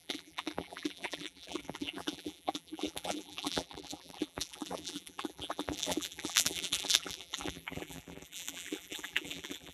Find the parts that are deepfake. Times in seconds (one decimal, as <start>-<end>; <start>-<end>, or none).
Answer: 0.0-9.7